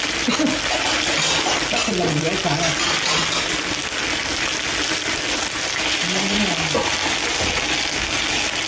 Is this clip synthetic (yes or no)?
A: no